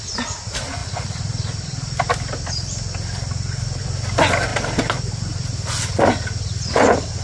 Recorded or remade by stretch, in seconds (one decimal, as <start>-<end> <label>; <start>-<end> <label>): 0.0-4.5 recorded; 4.5-5.1 remade; 5.1-7.2 recorded